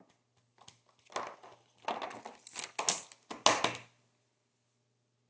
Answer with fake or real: real